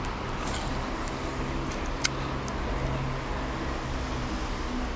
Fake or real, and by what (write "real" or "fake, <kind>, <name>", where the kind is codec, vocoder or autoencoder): real